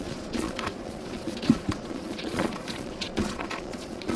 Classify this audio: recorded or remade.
remade